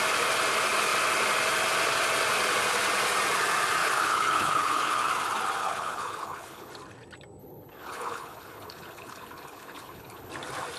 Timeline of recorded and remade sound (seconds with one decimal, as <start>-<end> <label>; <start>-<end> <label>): 0.0-3.8 recorded; 3.8-5.1 remade; 5.1-5.6 recorded; 5.6-6.7 remade; 6.7-7.4 recorded; 7.4-10.3 remade; 10.3-10.8 recorded